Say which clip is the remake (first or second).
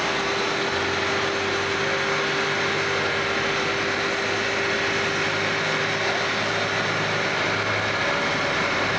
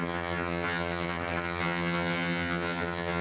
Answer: second